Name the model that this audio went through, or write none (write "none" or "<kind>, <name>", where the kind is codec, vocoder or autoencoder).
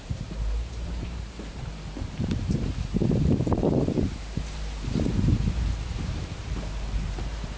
vocoder, BigVGAN v2